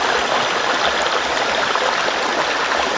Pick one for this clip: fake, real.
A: real